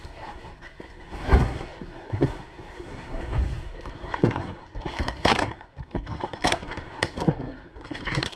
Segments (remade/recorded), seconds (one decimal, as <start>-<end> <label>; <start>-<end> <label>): 0.0-8.4 remade